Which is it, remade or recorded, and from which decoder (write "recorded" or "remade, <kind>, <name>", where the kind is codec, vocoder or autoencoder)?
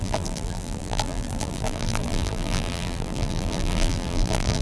remade, vocoder, BigVGAN v2